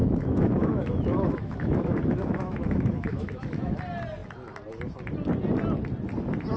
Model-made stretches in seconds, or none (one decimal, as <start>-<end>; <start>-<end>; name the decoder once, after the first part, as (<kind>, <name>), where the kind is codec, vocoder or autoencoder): 0.0-3.8 (autoencoder, DAC-VAE)